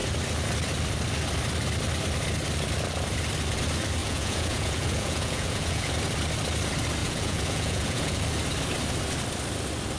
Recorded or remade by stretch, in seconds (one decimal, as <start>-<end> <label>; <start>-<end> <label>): 0.0-4.0 recorded; 4.0-5.9 remade; 5.9-7.0 recorded; 7.0-8.2 remade; 8.2-10.0 recorded